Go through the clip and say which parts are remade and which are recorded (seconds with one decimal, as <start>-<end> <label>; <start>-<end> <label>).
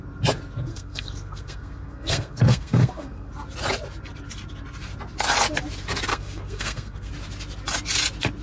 0.0-0.7 recorded; 0.7-3.3 remade; 3.3-6.1 recorded; 6.1-7.1 remade; 7.1-8.4 recorded